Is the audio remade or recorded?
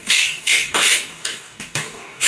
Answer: remade